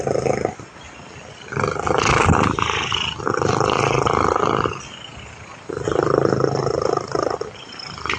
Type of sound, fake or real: real